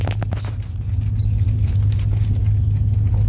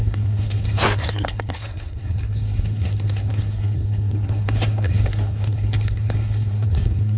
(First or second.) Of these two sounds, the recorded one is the first